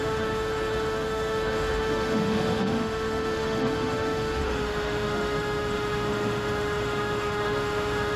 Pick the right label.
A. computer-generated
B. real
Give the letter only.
A